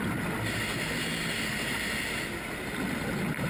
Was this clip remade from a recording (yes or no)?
no